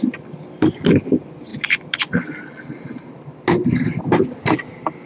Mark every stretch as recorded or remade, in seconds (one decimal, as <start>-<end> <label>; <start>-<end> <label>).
0.0-5.1 recorded